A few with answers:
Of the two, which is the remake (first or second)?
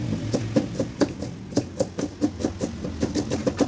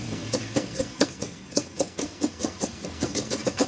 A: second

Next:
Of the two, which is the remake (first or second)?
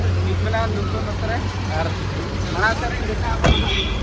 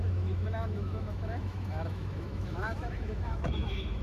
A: second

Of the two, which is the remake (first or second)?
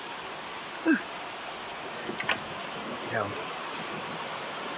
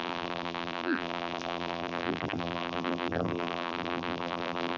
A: second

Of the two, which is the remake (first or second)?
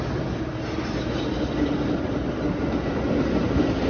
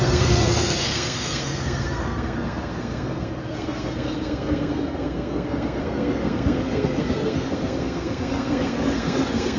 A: second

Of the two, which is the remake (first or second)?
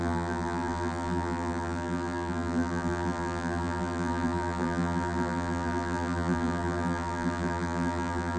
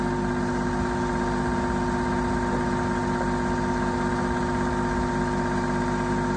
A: first